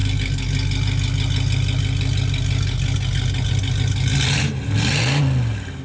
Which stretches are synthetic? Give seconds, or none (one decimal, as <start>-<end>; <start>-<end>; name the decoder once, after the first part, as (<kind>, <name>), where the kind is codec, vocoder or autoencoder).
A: none